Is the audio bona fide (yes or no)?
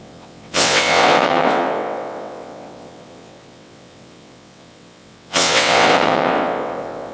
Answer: no